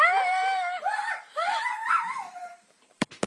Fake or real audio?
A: fake